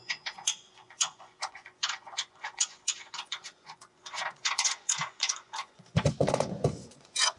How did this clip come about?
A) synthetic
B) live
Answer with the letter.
A